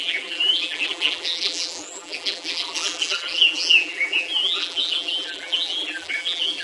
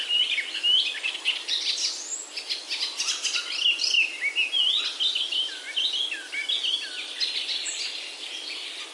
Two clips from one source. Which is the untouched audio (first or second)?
second